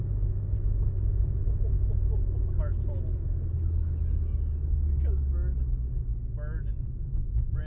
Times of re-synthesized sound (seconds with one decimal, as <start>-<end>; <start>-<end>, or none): none